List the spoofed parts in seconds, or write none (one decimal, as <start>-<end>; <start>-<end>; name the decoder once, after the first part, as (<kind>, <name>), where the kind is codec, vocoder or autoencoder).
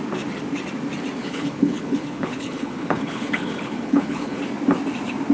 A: 1.2-4.4 (codec, HILCodec)